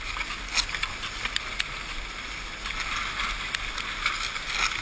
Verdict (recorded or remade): recorded